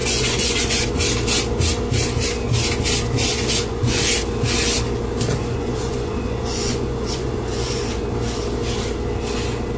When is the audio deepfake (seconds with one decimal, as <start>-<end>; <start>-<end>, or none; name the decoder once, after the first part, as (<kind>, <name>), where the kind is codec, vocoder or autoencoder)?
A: 0.0-0.9 (vocoder, Vocos); 3.3-4.0; 5.4-7.8